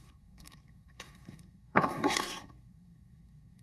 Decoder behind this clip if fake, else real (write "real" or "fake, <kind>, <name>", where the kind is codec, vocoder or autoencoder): fake, codec, SNAC